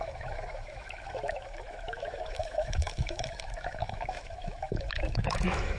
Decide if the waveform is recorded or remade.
remade